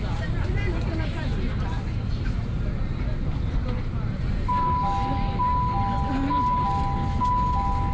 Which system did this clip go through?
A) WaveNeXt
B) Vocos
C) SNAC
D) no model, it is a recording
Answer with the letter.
D